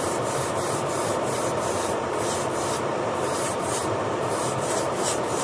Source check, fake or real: fake